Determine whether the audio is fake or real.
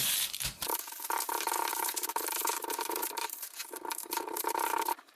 fake